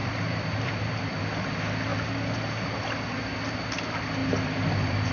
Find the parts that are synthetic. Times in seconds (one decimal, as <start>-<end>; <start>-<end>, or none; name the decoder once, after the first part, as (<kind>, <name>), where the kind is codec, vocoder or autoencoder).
0.0-1.2 (vocoder, BigVGAN v2); 4.2-5.1